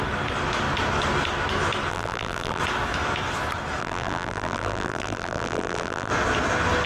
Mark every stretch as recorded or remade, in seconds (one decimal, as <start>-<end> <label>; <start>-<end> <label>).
0.0-1.9 recorded; 1.9-2.6 remade; 2.6-3.8 recorded; 3.8-6.1 remade; 6.1-6.9 recorded

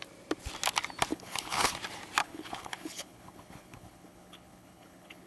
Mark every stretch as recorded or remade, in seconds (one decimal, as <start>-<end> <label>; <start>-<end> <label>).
0.0-1.1 recorded; 1.1-1.7 remade; 1.7-2.2 recorded; 2.2-5.3 remade

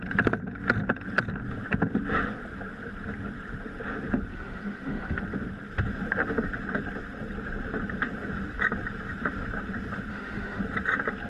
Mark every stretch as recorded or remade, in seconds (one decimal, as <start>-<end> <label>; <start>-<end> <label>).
0.0-4.3 recorded; 4.3-5.2 remade; 5.2-10.1 recorded; 10.1-10.6 remade; 10.6-11.3 recorded